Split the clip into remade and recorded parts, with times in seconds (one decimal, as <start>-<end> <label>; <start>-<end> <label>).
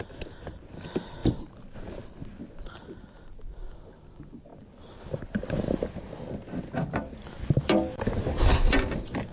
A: 0.0-9.3 recorded